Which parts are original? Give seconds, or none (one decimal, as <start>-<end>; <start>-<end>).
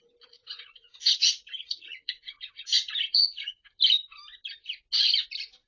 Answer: 0.0-0.4; 3.8-5.7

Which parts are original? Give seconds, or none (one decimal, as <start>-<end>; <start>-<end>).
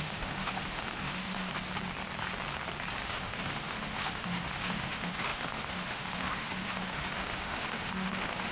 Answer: 1.5-3.0